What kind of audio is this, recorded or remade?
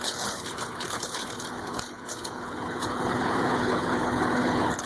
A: remade